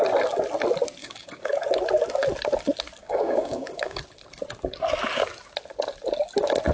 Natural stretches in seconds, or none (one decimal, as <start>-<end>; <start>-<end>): 0.0-1.0; 1.5-3.0; 4.0-6.7